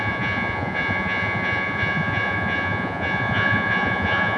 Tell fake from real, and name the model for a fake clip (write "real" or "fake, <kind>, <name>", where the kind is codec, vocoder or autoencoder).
fake, vocoder, Vocos